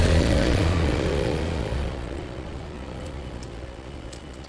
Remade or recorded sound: remade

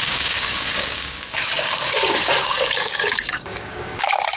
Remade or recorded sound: remade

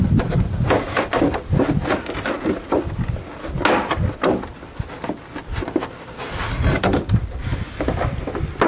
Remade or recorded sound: recorded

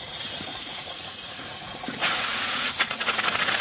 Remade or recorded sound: remade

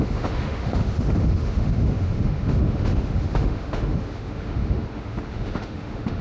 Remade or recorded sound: remade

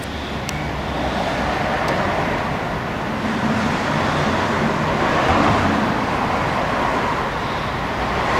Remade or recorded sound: recorded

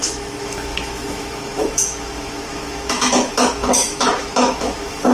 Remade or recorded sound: remade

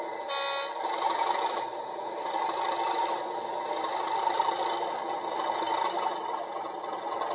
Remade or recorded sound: recorded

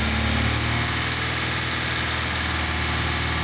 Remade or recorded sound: recorded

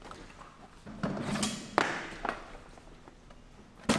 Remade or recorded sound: recorded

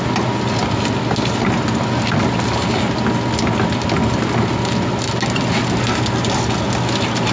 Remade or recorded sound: recorded